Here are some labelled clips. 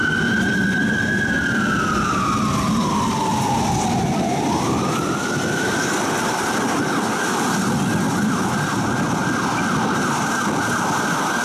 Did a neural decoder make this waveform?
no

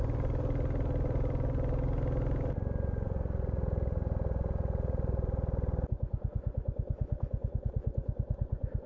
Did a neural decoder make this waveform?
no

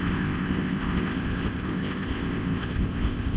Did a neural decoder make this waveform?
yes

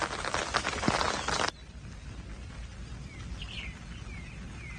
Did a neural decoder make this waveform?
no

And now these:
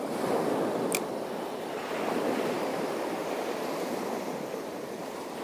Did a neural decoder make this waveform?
no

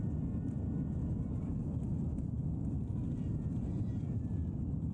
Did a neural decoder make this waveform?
no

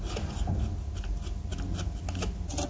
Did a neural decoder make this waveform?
no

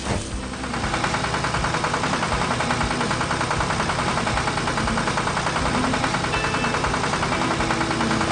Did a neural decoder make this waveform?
no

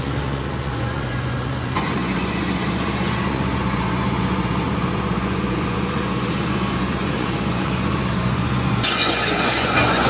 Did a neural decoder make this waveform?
yes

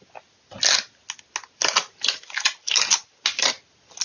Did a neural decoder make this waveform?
no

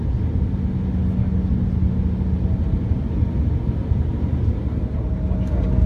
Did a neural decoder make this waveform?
no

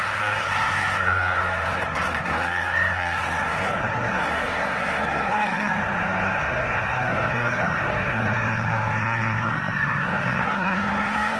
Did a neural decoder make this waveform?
yes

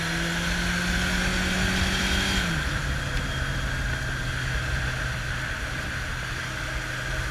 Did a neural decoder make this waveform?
no